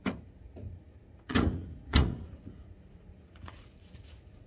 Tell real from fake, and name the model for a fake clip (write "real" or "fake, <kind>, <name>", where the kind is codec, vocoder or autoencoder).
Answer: fake, vocoder, Vocos